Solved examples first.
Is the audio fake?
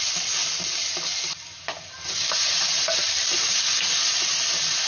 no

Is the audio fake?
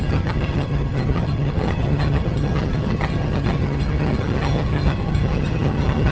yes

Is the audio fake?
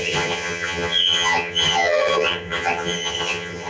yes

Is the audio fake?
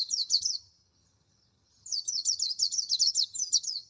yes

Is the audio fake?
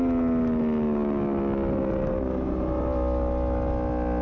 no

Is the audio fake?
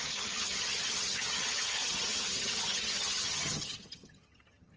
yes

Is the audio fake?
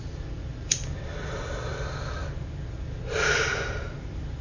no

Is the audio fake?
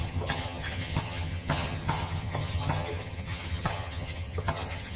yes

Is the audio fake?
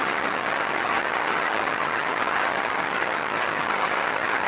yes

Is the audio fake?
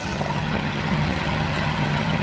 yes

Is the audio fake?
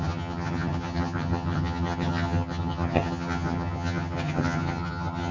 yes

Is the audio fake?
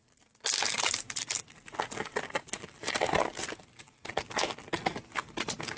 no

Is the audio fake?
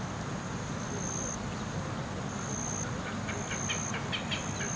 no